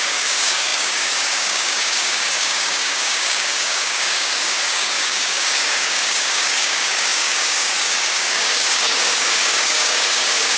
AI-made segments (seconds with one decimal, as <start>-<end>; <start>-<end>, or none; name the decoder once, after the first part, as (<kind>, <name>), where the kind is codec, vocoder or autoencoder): 0.0-10.6 (codec, DAC)